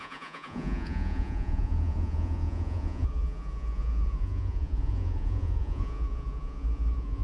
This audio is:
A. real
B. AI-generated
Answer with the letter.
B